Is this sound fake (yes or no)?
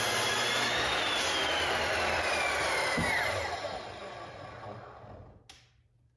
no